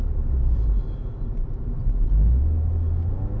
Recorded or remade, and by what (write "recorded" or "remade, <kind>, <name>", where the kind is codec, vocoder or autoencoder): recorded